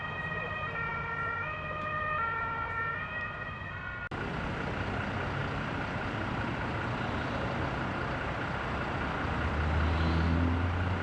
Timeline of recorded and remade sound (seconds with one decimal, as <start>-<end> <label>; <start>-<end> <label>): 0.0-11.0 recorded